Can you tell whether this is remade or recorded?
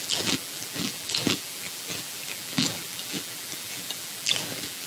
remade